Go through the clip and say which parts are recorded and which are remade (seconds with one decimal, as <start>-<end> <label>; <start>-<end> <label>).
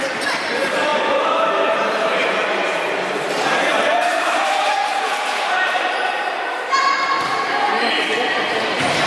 0.0-9.1 remade